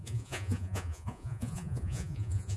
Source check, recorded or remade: remade